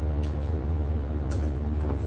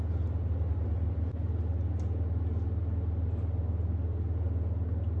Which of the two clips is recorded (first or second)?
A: second